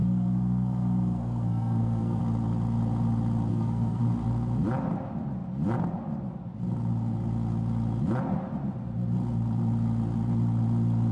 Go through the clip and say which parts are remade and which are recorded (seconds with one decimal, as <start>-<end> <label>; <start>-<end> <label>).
0.0-2.2 remade; 2.2-3.5 recorded; 3.5-4.0 remade; 4.0-11.1 recorded